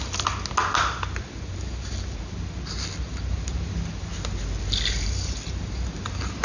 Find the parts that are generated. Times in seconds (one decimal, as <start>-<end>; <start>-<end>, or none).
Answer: none